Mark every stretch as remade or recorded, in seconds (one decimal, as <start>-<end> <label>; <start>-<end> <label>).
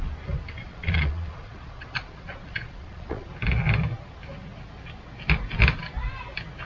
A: 0.0-0.6 recorded; 0.6-3.3 remade; 3.3-6.7 recorded